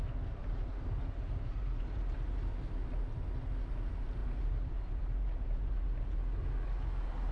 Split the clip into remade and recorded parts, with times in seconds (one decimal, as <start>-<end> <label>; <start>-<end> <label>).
0.0-0.4 recorded; 0.4-2.3 remade; 2.3-4.2 recorded; 4.2-6.1 remade; 6.1-7.3 recorded